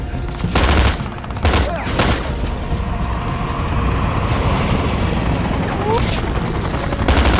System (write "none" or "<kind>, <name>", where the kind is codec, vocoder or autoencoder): none